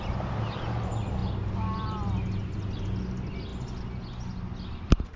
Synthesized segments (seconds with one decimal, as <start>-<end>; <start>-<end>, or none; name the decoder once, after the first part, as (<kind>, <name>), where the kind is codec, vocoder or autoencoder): none